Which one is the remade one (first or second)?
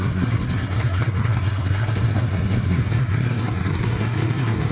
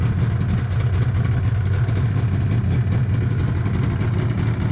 first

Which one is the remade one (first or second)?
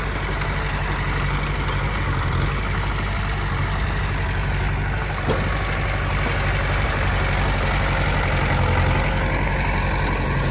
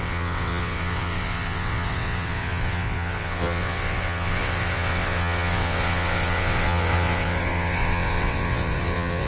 second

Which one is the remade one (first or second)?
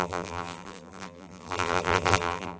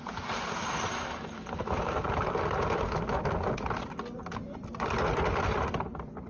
first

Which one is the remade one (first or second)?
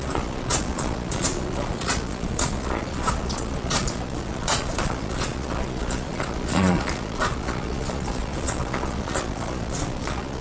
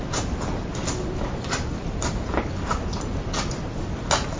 first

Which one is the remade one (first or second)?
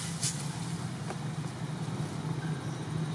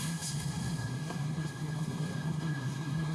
second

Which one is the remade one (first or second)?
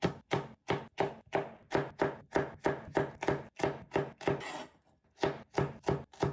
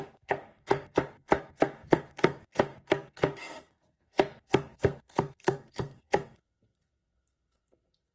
second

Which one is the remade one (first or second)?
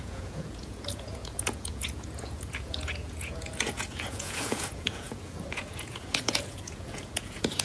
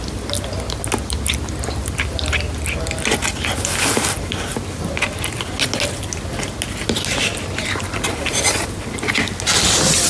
first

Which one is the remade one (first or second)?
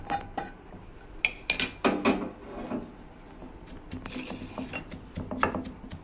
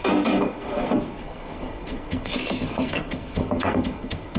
second